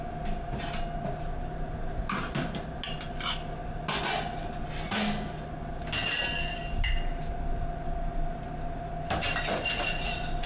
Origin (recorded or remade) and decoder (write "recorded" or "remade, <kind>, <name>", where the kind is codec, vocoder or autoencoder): recorded